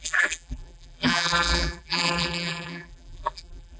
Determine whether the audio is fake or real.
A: fake